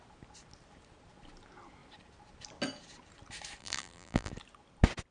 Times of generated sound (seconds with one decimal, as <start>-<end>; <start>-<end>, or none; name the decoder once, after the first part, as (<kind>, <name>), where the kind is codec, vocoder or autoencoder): 3.6-4.3 (vocoder, BigVGAN v2)